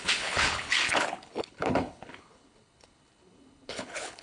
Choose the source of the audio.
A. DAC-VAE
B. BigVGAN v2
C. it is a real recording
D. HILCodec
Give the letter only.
D